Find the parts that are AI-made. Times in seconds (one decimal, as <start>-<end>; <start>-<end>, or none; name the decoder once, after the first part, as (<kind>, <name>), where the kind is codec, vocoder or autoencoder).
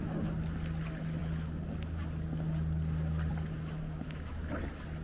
none